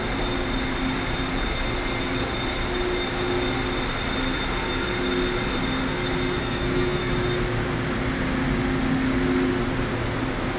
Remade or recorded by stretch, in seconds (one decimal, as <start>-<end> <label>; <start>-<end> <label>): 0.0-6.4 recorded; 6.4-7.1 remade; 7.1-10.6 recorded